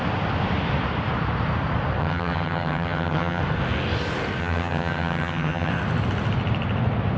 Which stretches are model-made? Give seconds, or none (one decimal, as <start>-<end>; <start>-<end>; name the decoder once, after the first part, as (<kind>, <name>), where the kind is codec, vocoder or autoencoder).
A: 2.0-3.4 (vocoder, HiFi-GAN); 4.4-5.7